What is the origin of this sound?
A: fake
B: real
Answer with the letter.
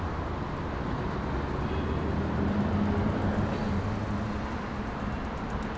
B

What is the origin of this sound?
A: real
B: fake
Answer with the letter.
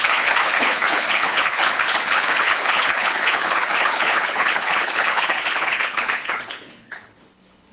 B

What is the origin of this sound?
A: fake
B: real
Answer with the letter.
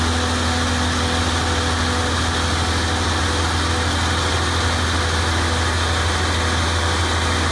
B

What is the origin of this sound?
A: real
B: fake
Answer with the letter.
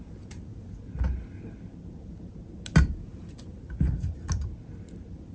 A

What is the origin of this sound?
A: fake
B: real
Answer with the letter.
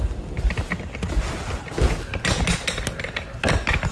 B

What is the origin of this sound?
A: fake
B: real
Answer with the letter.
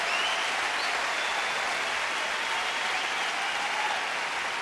B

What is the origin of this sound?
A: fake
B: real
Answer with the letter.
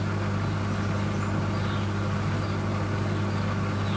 B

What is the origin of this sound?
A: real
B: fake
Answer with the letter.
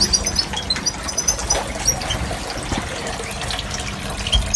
A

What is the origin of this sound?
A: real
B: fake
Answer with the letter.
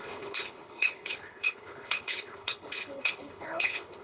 B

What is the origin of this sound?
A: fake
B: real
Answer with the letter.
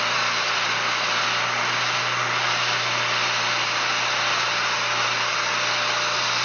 B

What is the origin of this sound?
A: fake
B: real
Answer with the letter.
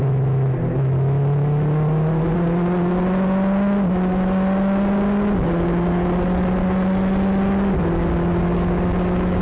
B